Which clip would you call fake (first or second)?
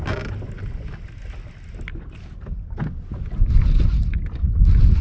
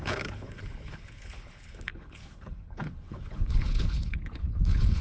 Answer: second